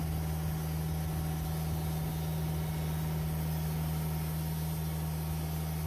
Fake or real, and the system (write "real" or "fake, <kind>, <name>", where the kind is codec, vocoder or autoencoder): real